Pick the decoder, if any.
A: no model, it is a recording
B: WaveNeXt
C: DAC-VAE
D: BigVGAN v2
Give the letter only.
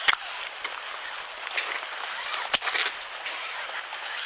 A